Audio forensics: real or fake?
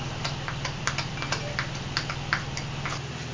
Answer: real